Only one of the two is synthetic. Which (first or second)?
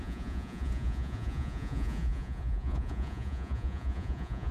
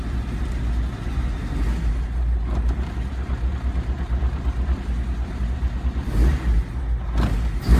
first